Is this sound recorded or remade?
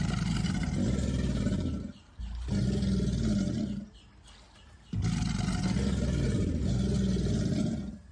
recorded